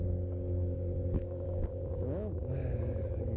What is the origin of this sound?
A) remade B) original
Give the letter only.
A